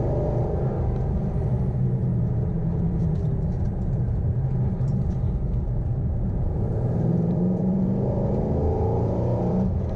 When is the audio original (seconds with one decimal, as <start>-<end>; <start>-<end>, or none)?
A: none